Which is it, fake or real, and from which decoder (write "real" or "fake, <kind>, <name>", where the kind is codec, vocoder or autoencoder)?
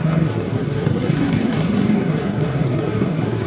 fake, codec, SNAC